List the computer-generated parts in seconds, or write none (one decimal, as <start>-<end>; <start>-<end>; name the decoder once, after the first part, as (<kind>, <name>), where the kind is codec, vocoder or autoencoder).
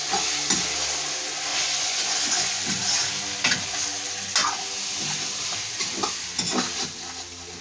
1.5-2.7 (vocoder, Vocos)